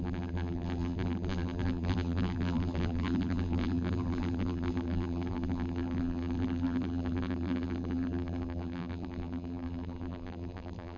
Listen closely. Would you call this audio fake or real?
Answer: fake